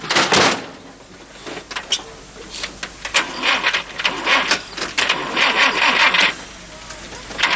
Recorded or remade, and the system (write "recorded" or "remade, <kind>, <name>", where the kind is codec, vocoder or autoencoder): recorded